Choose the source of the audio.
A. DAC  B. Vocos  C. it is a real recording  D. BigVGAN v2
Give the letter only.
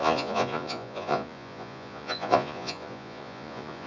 B